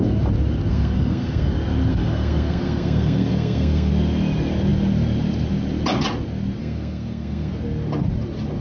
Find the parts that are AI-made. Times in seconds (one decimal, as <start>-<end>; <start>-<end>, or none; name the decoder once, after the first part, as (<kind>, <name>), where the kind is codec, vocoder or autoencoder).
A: 0.7-1.5 (codec, SNAC); 1.9-3.9; 6.6-7.5